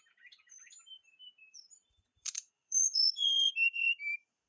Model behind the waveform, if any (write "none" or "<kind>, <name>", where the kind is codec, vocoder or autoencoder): vocoder, BigVGAN v2